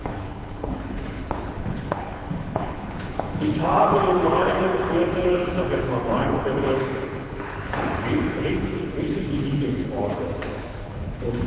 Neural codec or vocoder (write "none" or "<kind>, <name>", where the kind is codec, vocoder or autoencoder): codec, HILCodec